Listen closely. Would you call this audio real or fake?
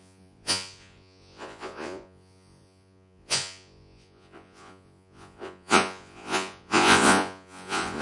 fake